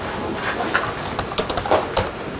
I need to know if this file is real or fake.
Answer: real